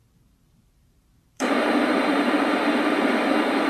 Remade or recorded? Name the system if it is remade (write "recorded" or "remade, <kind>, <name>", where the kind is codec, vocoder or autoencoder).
remade, vocoder, BigVGAN v2